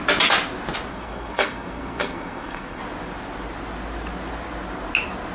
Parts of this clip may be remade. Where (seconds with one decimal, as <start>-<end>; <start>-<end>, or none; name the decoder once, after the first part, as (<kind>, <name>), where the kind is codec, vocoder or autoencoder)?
0.9-2.8 (codec, SNAC)